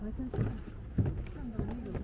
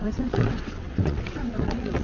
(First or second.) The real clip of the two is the first